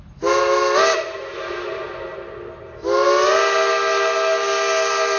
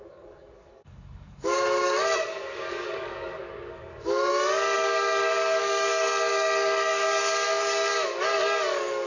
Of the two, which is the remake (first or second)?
second